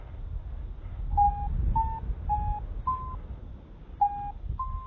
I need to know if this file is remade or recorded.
recorded